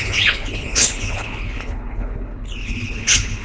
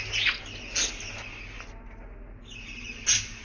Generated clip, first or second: first